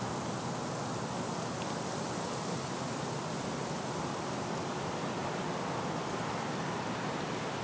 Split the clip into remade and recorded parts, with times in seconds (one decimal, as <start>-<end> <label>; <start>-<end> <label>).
0.0-7.6 recorded